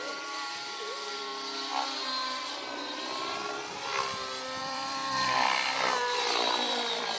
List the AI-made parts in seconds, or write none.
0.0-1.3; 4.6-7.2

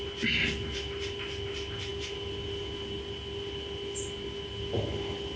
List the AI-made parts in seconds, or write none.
none

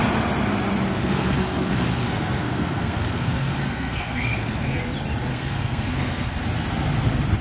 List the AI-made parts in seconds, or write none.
0.9-4.8; 5.3-6.4

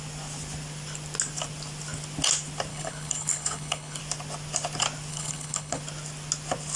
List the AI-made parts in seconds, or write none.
2.7-4.0; 5.1-5.8

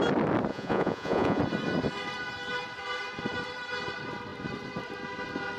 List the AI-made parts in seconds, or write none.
0.5-1.4